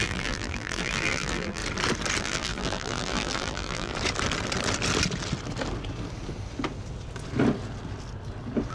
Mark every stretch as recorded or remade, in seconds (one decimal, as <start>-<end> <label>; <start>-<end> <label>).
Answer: 0.0-1.6 remade; 1.6-2.2 recorded; 2.2-3.9 remade; 3.9-8.7 recorded